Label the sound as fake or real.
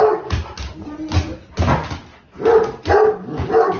real